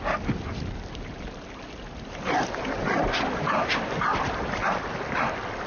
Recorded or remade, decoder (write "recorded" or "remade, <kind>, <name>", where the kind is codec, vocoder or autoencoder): recorded